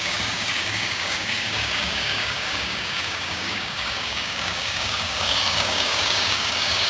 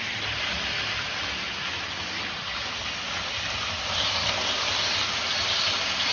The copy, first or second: first